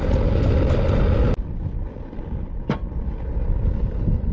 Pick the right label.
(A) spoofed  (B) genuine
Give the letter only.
B